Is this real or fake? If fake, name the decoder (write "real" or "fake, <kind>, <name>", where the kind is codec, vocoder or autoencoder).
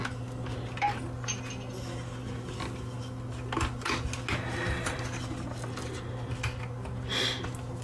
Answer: real